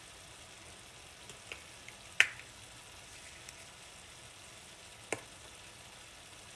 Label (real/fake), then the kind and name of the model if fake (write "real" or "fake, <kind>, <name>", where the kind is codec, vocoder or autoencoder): real